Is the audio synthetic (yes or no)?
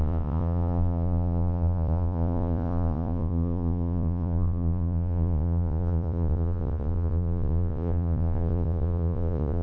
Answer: yes